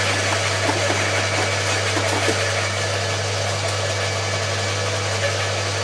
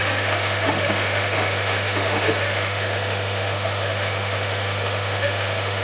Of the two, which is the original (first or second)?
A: first